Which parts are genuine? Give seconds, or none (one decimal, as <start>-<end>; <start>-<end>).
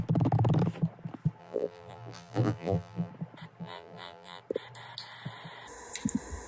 0.0-1.4; 3.1-3.6; 4.4-6.5